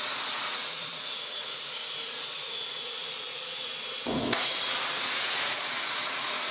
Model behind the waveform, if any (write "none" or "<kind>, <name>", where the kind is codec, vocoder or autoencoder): vocoder, Vocos